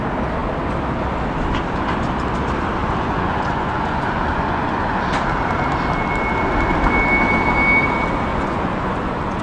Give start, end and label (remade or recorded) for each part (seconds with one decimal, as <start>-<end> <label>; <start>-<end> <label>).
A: 0.0-2.8 recorded; 2.8-5.0 remade; 5.0-8.3 recorded; 8.3-9.4 remade